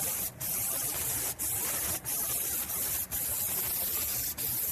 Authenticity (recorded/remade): recorded